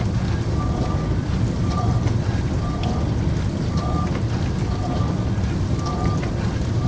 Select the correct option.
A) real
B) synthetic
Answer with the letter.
A